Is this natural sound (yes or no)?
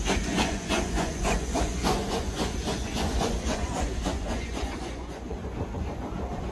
no